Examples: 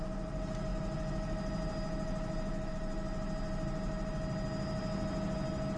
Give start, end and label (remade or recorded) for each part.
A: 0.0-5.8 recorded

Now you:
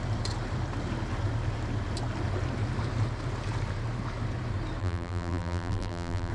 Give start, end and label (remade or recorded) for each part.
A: 0.0-4.8 recorded; 4.8-6.3 remade

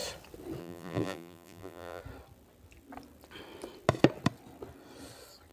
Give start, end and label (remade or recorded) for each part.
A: 0.0-0.6 recorded; 0.6-2.0 remade; 2.0-5.5 recorded

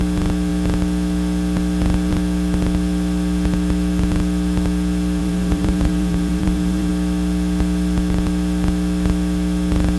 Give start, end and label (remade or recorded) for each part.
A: 0.0-5.2 recorded; 5.2-6.9 remade; 6.9-10.0 recorded

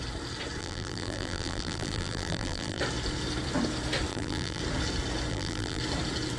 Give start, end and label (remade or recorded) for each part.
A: 0.0-0.6 recorded; 0.6-2.8 remade; 2.8-4.1 recorded; 4.1-4.6 remade; 4.6-5.3 recorded; 5.3-5.8 remade; 5.8-6.4 recorded

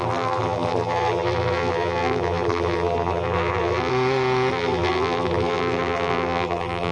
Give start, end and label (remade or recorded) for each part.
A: 0.0-3.9 remade; 3.9-4.5 recorded; 4.5-6.9 remade